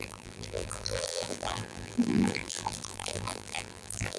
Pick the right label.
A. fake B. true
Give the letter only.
A